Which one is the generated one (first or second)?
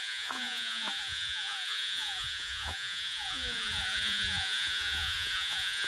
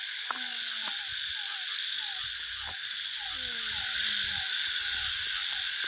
first